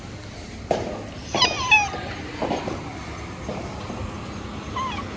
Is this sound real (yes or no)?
yes